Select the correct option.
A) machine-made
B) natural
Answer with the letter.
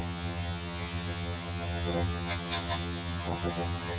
A